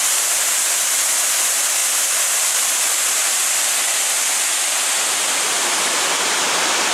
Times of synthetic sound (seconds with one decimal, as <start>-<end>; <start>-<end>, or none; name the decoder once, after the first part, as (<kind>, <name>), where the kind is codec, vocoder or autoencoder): none